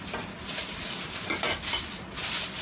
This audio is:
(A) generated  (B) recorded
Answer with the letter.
B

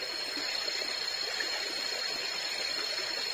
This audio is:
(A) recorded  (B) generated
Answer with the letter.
A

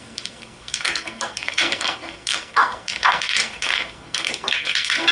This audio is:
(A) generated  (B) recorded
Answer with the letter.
A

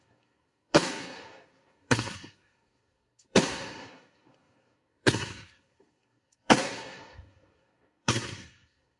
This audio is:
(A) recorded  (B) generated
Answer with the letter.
B